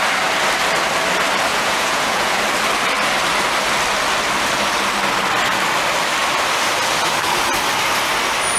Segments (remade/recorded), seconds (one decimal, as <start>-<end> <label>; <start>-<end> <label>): 0.0-1.5 recorded; 1.5-2.4 remade; 2.4-8.6 recorded